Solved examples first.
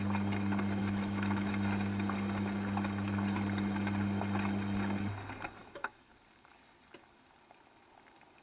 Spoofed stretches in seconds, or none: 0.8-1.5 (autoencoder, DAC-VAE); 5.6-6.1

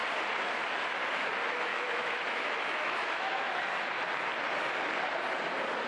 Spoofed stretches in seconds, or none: 1.7-3.7 (autoencoder, DAC-VAE)